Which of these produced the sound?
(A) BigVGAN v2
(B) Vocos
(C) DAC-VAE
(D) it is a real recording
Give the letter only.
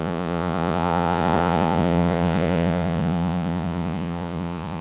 B